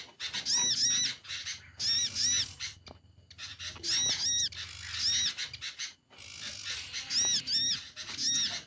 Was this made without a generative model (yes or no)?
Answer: yes